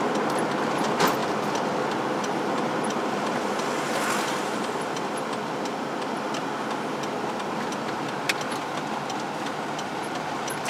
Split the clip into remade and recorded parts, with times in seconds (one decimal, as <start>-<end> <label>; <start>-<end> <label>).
0.0-10.7 recorded